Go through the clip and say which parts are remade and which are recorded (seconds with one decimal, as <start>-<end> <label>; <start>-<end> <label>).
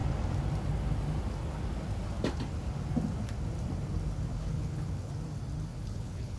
0.0-4.3 recorded; 4.3-5.1 remade; 5.1-5.7 recorded; 5.7-6.4 remade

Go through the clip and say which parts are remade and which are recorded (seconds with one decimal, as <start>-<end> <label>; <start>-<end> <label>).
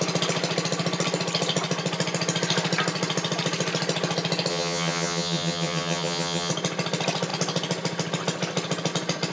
0.0-4.5 recorded; 4.5-6.5 remade; 6.5-9.3 recorded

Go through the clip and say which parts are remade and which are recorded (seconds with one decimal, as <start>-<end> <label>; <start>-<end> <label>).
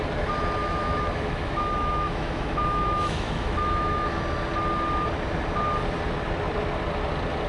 0.0-0.6 recorded; 0.6-4.2 remade; 4.2-7.5 recorded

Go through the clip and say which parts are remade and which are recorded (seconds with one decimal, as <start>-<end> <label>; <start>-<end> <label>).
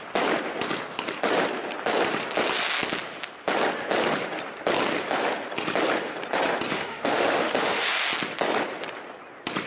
0.0-6.7 recorded; 6.7-7.8 remade; 7.8-9.7 recorded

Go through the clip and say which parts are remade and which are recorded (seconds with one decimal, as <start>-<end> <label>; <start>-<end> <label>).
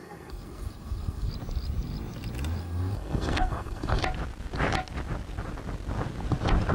0.0-1.3 remade; 1.3-2.6 recorded; 2.6-4.0 remade; 4.0-6.7 recorded